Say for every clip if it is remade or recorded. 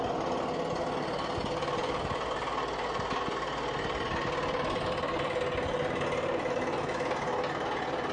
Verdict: recorded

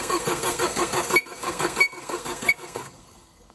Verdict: remade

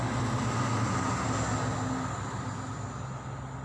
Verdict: recorded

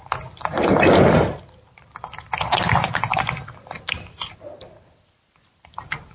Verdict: recorded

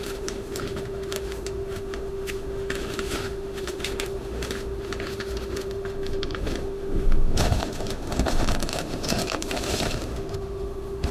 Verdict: remade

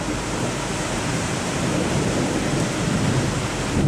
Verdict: remade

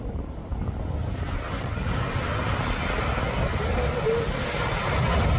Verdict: recorded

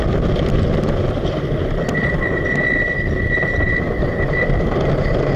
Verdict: recorded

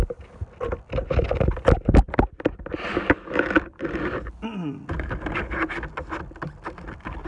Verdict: recorded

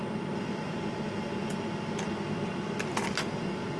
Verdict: recorded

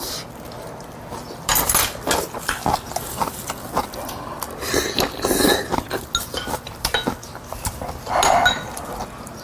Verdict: recorded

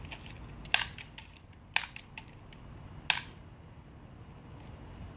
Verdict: recorded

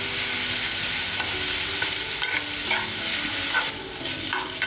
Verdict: recorded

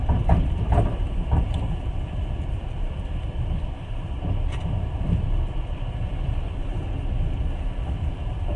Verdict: remade